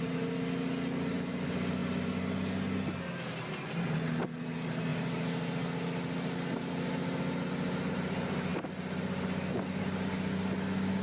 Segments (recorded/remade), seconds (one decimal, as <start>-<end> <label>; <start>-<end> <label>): 0.0-11.0 recorded